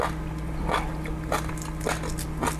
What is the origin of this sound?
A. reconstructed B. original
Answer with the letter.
B